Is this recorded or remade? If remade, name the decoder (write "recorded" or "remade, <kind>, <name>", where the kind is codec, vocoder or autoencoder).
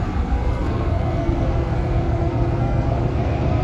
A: remade, codec, SNAC